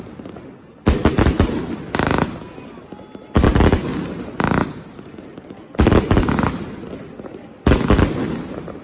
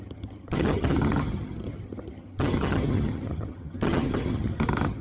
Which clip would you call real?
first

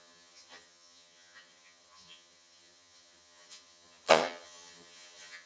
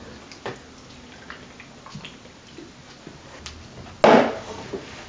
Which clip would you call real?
second